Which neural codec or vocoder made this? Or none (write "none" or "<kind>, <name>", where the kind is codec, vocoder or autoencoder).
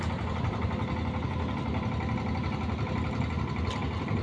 none